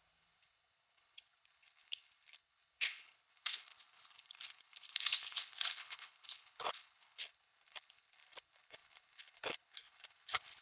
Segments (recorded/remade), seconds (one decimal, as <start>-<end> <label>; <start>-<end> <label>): 0.0-10.6 remade